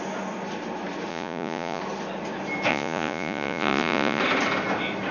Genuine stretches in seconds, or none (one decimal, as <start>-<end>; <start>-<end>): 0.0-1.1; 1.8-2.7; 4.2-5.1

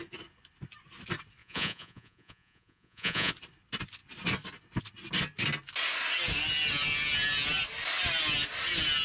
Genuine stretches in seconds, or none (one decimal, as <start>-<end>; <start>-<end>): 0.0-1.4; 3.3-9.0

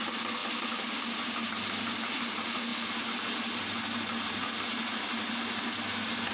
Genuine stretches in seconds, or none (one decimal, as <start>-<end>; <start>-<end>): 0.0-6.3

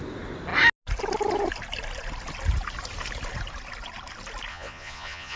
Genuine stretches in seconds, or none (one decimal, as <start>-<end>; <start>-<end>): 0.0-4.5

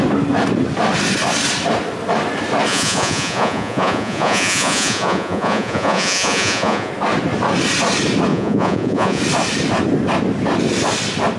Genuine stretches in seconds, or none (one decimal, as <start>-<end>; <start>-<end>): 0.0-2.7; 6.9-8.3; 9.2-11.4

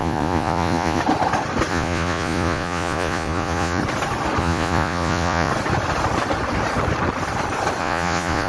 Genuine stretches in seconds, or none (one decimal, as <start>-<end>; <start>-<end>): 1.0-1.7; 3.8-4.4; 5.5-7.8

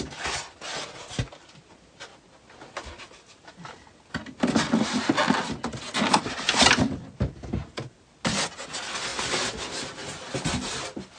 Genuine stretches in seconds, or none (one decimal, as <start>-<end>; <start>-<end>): 0.0-11.2

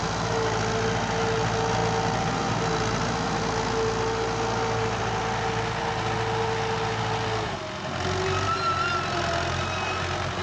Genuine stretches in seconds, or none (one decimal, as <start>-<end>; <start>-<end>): 0.0-10.4